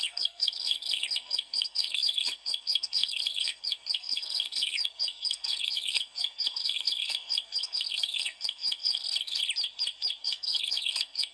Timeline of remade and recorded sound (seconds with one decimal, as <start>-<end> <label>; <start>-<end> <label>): 0.0-9.4 remade; 9.4-10.2 recorded; 10.2-11.3 remade